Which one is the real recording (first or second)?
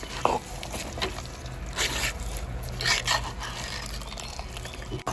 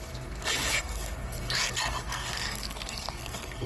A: first